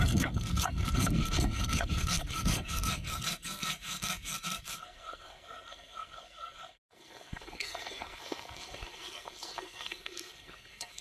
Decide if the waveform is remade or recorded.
remade